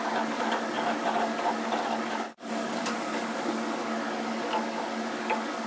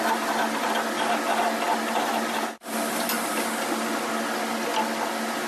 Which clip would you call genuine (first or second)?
second